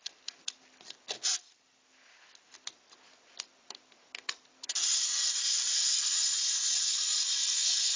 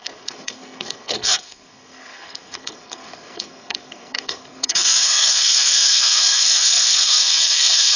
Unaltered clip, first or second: first